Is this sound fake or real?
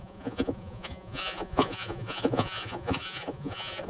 fake